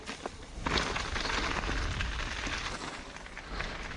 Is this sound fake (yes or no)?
no